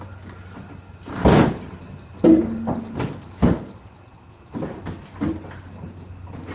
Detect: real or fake real